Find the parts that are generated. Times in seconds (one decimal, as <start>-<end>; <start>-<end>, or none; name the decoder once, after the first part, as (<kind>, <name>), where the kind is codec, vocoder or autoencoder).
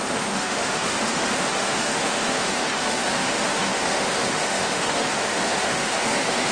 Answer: 0.0-6.5 (autoencoder, DAC-VAE)